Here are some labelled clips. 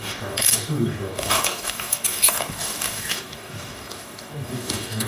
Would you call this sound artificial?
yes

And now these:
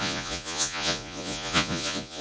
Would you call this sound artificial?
yes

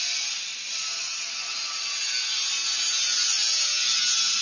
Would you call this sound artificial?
no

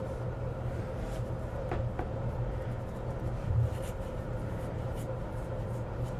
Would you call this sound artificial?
yes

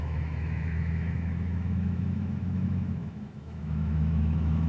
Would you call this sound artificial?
yes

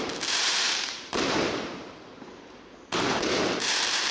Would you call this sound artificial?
yes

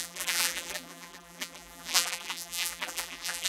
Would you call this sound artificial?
yes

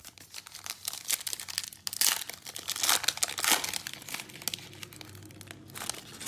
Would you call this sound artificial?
no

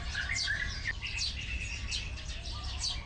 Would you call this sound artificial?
no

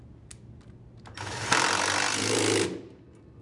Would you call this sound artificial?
no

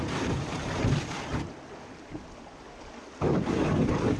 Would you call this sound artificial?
yes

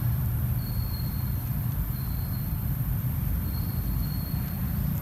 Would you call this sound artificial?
yes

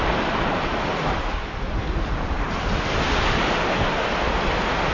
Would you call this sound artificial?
no